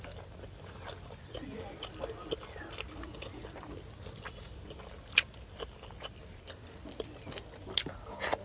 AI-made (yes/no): no